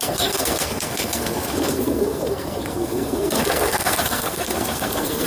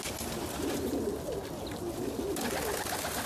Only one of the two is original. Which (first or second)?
second